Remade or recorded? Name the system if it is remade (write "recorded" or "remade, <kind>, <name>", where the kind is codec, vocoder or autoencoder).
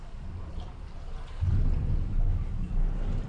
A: recorded